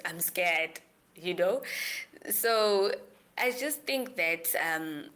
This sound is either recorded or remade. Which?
recorded